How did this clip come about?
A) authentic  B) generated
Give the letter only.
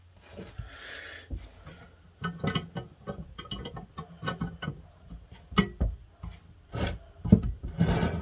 A